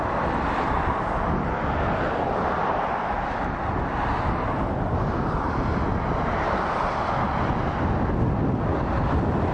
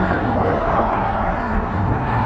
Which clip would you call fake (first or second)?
second